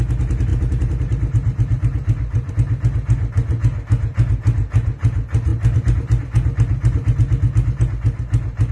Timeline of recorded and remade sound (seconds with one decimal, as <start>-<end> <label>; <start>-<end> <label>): 0.0-0.5 recorded; 0.5-2.5 remade; 2.5-8.7 recorded